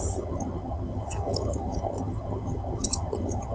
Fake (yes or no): yes